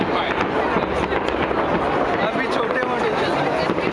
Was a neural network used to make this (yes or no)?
no